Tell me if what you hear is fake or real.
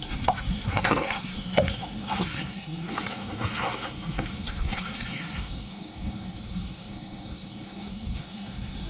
fake